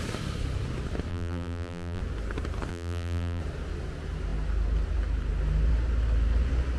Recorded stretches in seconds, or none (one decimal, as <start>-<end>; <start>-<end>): 0.0-1.1; 2.0-2.7; 3.4-6.8